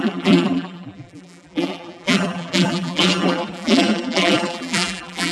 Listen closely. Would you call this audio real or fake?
fake